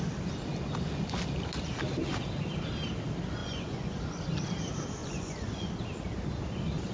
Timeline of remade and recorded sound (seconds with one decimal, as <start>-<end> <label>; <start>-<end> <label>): 0.0-3.4 recorded; 3.4-4.1 remade; 4.1-5.0 recorded; 5.0-5.7 remade; 5.7-6.9 recorded